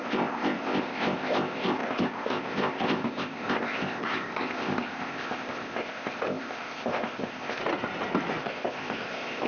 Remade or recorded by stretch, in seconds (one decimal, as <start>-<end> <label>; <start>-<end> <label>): 0.0-7.6 remade; 7.6-8.4 recorded; 8.4-9.5 remade